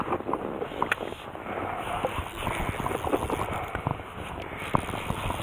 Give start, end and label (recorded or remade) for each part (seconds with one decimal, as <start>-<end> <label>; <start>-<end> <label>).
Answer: 0.0-5.4 recorded